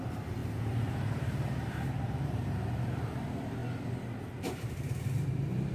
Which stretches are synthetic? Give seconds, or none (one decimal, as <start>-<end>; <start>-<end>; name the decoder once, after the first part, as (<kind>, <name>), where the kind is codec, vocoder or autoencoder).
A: 0.0-3.6 (vocoder, BigVGAN v2); 4.4-5.7